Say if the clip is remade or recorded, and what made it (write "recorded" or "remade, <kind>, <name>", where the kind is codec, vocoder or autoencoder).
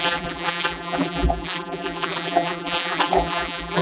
remade, vocoder, BigVGAN v2